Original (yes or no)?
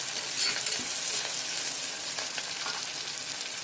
yes